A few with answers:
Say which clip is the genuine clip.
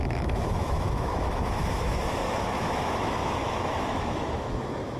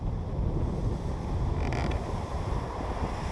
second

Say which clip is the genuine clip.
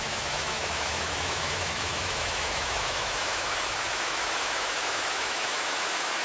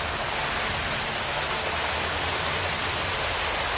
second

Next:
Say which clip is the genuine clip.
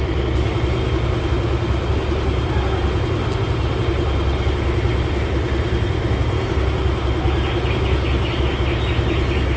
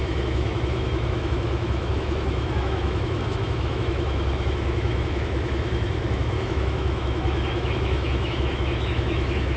first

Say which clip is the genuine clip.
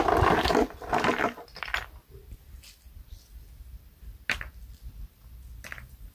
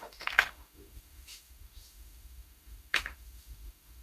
first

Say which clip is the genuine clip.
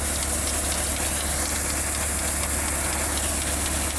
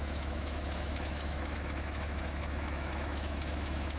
first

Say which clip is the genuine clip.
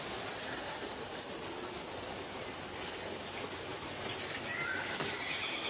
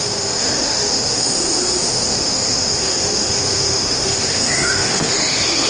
first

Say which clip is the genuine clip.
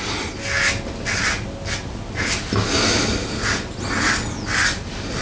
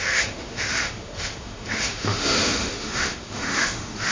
first